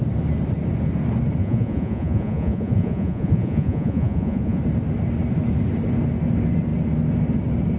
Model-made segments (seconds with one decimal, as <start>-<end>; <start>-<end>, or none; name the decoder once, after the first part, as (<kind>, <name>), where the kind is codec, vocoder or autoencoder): 1.4-4.6 (vocoder, Vocos)